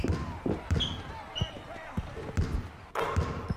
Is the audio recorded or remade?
recorded